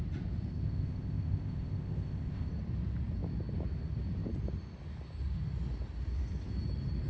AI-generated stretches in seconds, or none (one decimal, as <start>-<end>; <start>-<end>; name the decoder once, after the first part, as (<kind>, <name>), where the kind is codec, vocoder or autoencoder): 0.5-2.5 (codec, ZipCodec)